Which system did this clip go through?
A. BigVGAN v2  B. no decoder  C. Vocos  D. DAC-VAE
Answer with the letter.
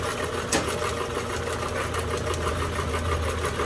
B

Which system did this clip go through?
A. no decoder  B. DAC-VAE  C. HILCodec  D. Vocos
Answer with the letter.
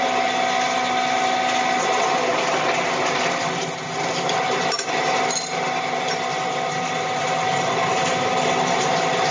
A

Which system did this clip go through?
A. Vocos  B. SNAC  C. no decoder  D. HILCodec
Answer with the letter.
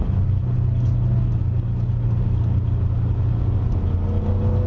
C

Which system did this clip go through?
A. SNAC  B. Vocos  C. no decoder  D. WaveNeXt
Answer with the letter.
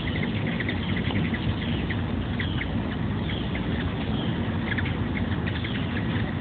C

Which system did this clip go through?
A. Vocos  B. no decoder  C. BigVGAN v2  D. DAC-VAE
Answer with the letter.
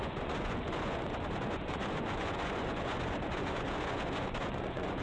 A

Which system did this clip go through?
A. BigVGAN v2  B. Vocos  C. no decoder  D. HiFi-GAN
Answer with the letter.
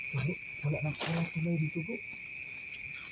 C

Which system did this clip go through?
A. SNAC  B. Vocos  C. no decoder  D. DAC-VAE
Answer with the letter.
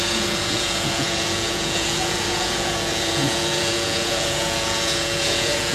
B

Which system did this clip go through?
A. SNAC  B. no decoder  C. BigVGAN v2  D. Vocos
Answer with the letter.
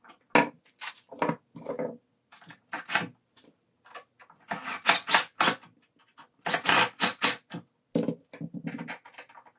B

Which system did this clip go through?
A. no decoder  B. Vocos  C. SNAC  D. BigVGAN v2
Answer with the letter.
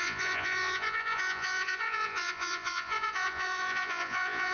B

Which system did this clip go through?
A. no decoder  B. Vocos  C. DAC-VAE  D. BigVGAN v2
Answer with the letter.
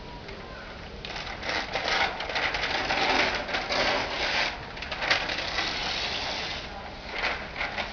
A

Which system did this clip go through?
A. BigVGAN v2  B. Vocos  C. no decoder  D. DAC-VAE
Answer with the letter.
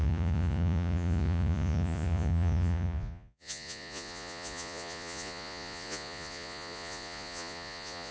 B